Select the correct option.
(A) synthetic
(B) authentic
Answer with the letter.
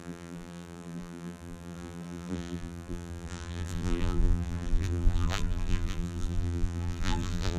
A